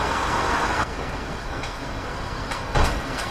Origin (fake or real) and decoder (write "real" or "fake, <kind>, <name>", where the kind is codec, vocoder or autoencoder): fake, codec, SNAC